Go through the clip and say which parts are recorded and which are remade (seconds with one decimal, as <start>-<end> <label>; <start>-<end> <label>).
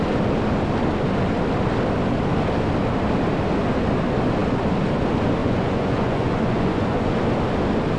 0.0-5.4 recorded; 5.4-7.2 remade; 7.2-8.0 recorded